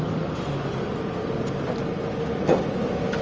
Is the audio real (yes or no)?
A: yes